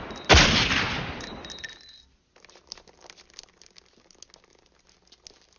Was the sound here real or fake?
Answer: real